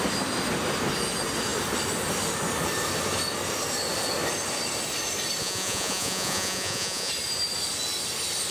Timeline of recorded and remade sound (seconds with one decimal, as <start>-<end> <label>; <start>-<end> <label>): 0.0-5.4 recorded; 5.4-7.1 remade; 7.1-8.5 recorded